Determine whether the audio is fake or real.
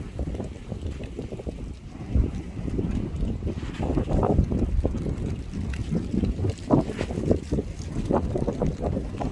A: fake